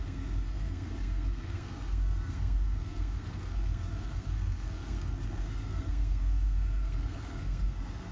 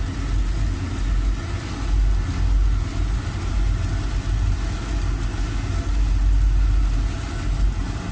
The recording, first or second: second